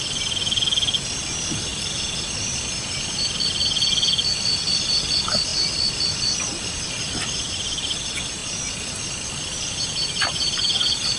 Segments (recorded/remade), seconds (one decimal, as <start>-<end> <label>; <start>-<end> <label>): 0.0-11.2 recorded